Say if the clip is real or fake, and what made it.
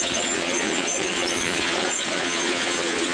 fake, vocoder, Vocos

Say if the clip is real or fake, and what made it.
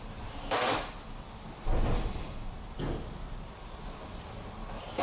real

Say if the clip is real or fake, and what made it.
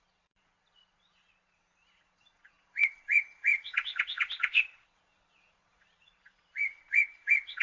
fake, vocoder, Vocos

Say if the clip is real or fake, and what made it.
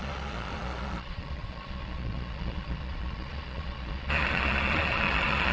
fake, vocoder, Vocos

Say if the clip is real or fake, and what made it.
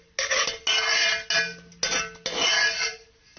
real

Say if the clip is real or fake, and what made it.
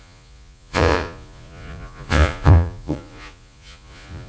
fake, vocoder, Vocos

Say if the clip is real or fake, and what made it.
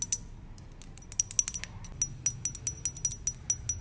real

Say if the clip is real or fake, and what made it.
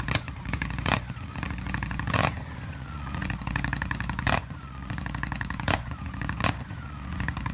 fake, vocoder, Vocos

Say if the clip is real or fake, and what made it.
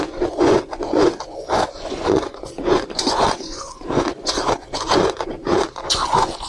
fake, vocoder, Vocos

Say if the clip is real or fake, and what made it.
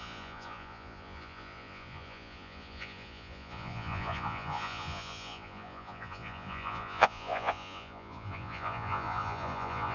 fake, vocoder, Vocos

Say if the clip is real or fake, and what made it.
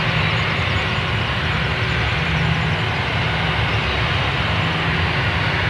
real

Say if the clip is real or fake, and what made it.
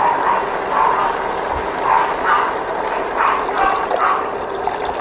real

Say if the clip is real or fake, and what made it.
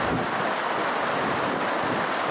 real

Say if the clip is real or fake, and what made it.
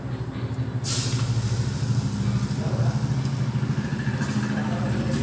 real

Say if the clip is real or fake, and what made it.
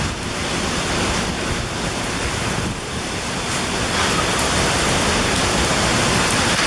real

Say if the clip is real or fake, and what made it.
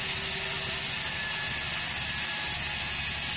real